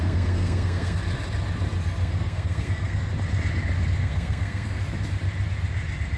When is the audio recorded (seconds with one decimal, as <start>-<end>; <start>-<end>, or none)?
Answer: 1.0-2.0; 3.1-4.0; 4.8-6.2